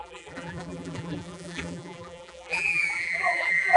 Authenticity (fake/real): fake